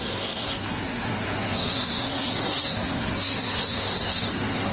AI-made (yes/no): yes